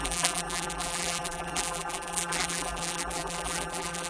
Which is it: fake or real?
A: fake